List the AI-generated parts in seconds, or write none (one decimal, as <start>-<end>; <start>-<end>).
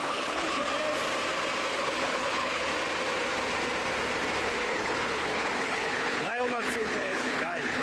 0.0-0.7; 1.7-2.7; 4.4-7.8